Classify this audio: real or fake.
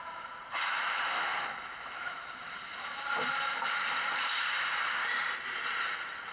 fake